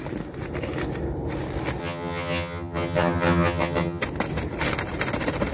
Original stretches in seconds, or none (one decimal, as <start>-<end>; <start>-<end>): 0.0-1.8; 4.0-5.5